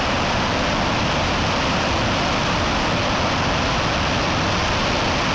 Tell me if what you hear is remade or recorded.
recorded